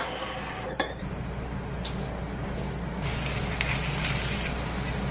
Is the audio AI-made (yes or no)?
yes